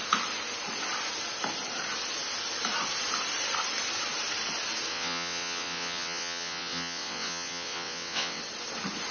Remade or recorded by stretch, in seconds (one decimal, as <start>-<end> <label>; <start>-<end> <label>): 0.0-4.9 recorded; 4.9-8.4 remade; 8.4-9.1 recorded